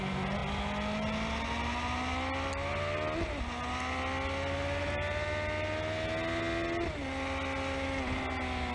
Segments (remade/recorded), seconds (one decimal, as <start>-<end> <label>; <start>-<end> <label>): 0.0-8.7 recorded